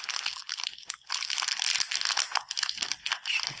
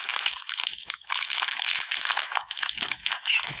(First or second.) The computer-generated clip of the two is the second